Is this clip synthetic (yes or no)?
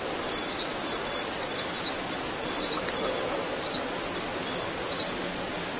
no